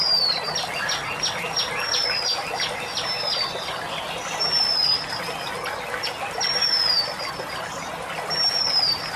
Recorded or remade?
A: recorded